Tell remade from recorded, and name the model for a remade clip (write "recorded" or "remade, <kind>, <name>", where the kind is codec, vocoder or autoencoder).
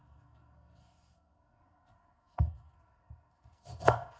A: remade, codec, SNAC